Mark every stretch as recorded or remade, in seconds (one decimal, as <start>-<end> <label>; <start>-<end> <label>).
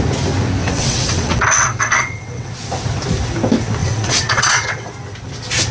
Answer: 0.0-0.6 recorded; 0.6-2.5 remade; 2.5-3.8 recorded; 3.8-4.9 remade; 4.9-5.7 recorded